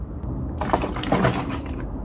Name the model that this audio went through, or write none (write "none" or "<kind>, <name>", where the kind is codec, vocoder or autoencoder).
none